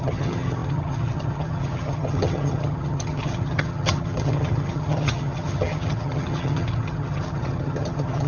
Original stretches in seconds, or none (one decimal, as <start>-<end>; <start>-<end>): none